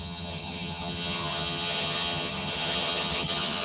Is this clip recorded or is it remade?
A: remade